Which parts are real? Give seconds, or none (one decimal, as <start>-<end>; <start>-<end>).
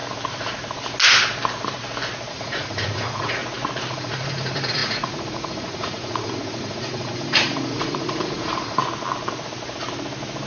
0.0-2.3; 3.4-3.9; 8.8-10.5